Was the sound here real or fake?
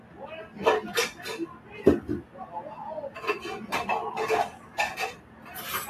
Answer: real